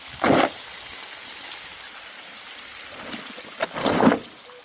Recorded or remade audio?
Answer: recorded